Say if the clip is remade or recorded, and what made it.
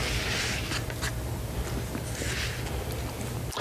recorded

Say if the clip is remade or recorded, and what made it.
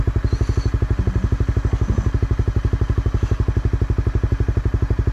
recorded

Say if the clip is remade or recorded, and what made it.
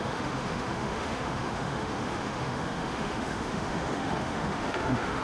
remade, autoencoder, DAC-VAE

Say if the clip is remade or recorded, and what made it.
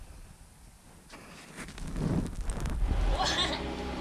recorded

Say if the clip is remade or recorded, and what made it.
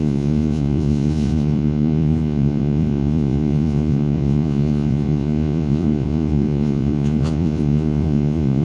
remade, vocoder, Vocos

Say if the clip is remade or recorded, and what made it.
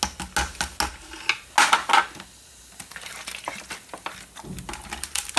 recorded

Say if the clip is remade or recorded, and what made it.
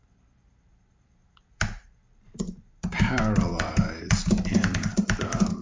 remade, vocoder, BigVGAN v2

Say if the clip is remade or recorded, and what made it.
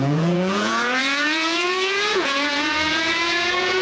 remade, vocoder, Vocos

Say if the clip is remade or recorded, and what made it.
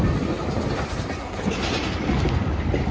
recorded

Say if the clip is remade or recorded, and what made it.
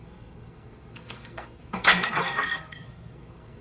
remade, codec, SNAC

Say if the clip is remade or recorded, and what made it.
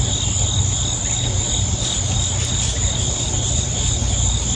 recorded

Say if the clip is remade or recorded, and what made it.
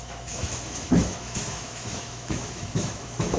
remade, autoencoder, DAC-VAE